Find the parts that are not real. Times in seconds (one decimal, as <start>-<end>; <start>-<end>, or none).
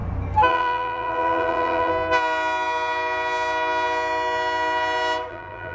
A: 0.5-1.9; 5.3-5.7